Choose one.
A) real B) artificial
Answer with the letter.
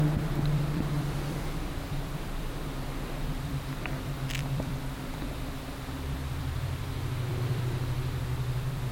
B